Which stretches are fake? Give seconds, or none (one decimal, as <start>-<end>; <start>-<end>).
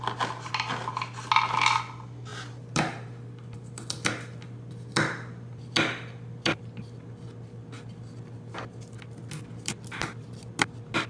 none